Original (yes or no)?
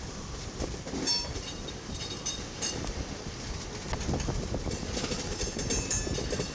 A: yes